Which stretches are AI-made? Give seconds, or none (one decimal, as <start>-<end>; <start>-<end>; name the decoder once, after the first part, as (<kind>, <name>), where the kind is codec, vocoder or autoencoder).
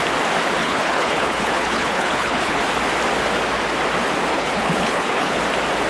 0.6-2.6 (codec, HILCodec); 4.3-5.4